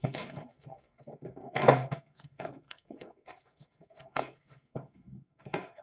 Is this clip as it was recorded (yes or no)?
no